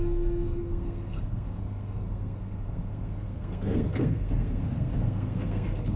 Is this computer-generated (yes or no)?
yes